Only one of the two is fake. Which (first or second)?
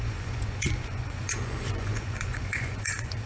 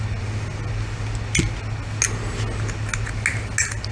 first